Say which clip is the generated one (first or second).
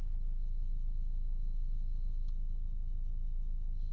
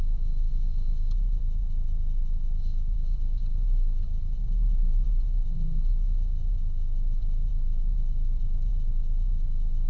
second